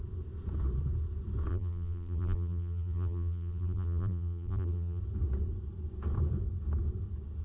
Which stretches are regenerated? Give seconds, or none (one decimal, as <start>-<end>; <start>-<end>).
1.5-5.0